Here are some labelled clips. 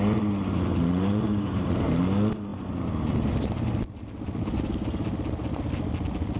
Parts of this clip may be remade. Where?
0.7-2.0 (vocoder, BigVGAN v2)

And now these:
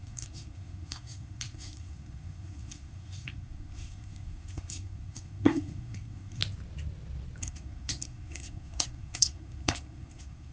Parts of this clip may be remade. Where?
0.0-6.4 (codec, SNAC); 7.4-10.5

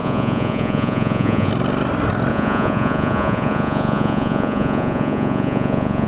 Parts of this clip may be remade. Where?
0.0-1.5 (vocoder, Vocos); 2.3-6.1

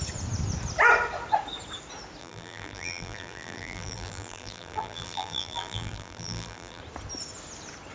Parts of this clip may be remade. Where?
2.2-6.8 (vocoder, BigVGAN v2)

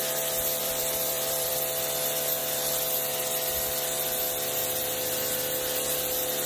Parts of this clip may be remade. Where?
0.6-1.5 (vocoder, BigVGAN v2)

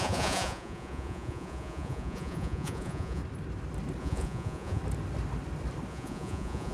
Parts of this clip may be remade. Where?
0.0-3.2 (vocoder, Vocos); 4.0-4.8; 5.9-6.7

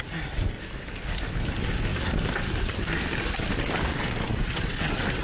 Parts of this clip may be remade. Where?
3.9-5.2 (vocoder, WaveNeXt)